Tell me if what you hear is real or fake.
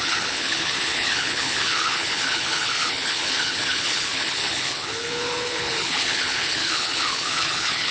fake